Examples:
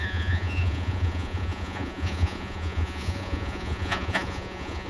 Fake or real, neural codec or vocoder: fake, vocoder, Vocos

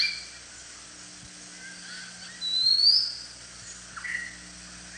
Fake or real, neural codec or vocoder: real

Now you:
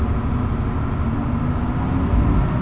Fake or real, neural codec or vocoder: real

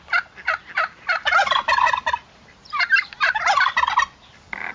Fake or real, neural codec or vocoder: real